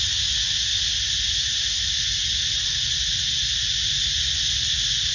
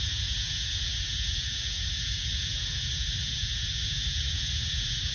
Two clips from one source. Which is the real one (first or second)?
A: first